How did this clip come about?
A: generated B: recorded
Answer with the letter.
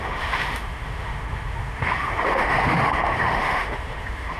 A